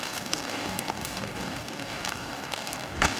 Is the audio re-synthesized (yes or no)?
yes